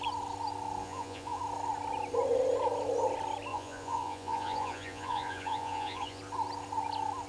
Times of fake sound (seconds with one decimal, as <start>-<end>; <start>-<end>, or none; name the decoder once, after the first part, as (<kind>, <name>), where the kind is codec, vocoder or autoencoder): 0.8-1.4 (vocoder, Vocos); 3.5-6.2